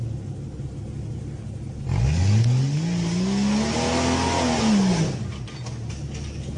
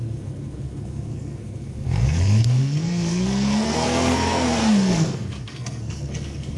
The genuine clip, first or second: first